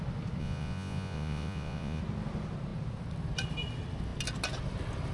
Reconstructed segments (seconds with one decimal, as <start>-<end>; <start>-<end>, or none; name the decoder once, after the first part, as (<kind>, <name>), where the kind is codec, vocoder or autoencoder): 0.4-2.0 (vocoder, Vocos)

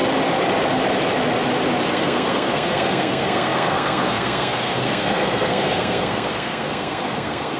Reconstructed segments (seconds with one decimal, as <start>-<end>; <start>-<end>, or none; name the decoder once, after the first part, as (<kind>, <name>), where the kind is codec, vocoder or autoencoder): 1.9-7.6 (codec, SNAC)

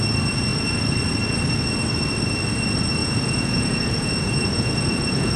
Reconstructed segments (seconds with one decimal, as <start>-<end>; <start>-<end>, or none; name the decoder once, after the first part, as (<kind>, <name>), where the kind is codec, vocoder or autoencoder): 3.0-5.4 (vocoder, Vocos)